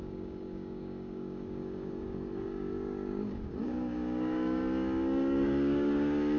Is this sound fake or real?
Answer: fake